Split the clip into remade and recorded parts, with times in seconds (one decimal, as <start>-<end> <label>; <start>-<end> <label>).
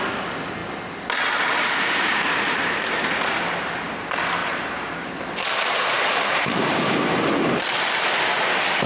0.0-4.4 recorded; 4.4-5.3 remade; 5.3-6.1 recorded; 6.1-6.6 remade; 6.6-8.9 recorded